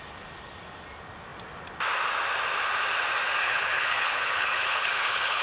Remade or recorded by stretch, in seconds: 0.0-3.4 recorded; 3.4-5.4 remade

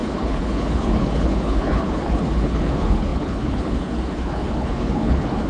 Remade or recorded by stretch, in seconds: 0.0-5.5 remade

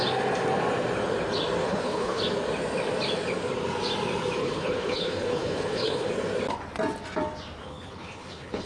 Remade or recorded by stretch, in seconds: 0.0-1.6 recorded; 1.6-2.2 remade; 2.2-4.4 recorded; 4.4-6.1 remade; 6.1-7.6 recorded; 7.6-8.7 remade

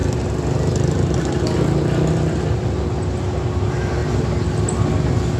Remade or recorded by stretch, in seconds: 0.0-5.4 recorded